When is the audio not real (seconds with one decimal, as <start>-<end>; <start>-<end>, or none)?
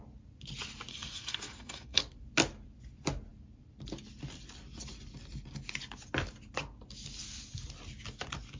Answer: 0.9-2.0